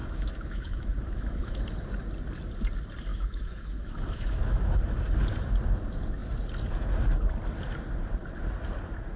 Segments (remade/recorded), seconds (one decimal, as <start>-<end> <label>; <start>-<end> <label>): 0.0-1.6 remade; 1.6-3.1 recorded; 3.1-4.6 remade; 4.6-9.2 recorded